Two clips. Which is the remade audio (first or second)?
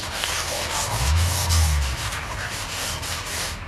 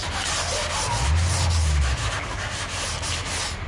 first